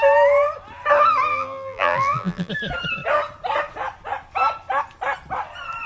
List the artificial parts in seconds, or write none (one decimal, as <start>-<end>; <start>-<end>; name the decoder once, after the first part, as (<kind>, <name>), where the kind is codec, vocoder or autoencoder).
1.3-2.5 (vocoder, BigVGAN v2)